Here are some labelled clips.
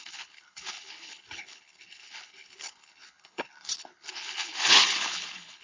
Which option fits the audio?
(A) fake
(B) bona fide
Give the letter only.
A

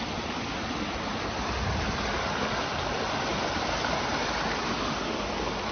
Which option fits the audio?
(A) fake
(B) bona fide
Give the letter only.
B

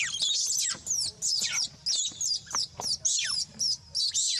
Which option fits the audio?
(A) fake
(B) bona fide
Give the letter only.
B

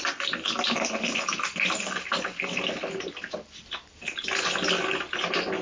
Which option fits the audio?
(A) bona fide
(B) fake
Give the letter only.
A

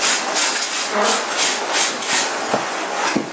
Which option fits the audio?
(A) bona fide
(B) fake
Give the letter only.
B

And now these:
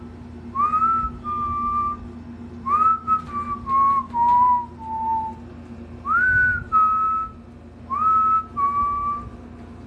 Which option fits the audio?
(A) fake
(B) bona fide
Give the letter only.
B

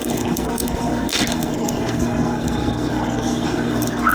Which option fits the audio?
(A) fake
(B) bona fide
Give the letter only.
A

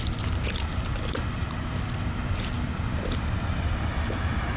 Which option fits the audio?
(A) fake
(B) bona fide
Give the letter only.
B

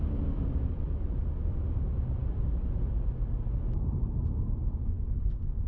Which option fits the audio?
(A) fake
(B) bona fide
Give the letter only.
B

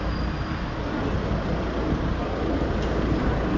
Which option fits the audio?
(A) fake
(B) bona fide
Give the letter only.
B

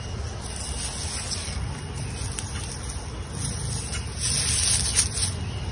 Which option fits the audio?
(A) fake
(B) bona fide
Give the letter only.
B